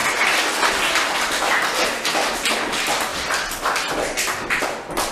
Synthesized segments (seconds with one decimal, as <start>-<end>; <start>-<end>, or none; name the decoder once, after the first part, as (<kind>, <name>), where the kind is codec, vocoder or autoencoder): 3.1-4.6 (vocoder, BigVGAN v2)